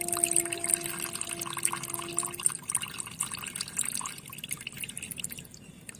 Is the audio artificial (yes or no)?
no